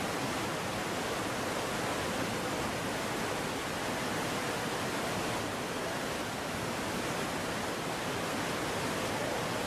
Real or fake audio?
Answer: real